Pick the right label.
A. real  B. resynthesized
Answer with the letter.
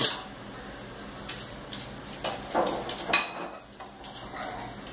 A